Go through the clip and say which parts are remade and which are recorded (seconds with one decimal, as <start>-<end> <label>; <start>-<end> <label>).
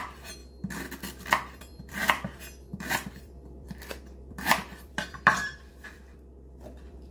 0.0-0.4 remade; 0.4-1.2 recorded; 1.2-7.1 remade